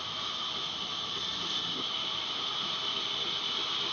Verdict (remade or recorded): recorded